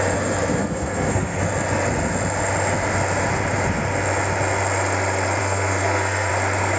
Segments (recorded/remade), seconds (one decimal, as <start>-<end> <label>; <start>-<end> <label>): 0.0-0.6 recorded; 0.6-1.4 remade; 1.4-5.4 recorded; 5.4-6.3 remade; 6.3-6.8 recorded